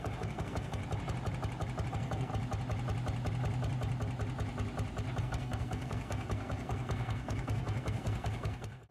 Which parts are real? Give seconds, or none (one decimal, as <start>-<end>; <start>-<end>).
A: 0.8-1.9; 2.3-5.2

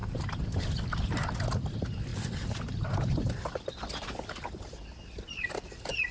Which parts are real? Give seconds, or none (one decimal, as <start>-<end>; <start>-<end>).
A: 0.0-6.1

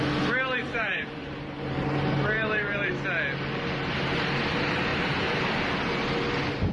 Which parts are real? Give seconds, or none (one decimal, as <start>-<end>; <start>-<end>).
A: 0.0-0.6; 2.9-4.9; 5.6-6.7

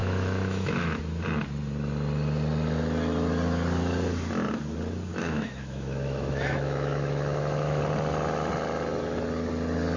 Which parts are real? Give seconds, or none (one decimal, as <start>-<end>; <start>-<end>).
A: 1.0-5.1; 7.8-10.0

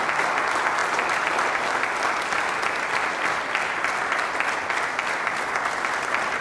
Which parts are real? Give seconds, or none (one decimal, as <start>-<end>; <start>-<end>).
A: 0.0-6.4